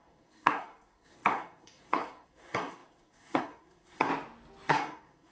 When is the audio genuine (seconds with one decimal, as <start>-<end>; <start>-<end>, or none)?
4.1-4.7